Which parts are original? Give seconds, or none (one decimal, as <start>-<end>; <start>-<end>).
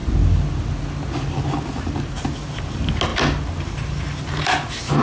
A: 0.0-5.0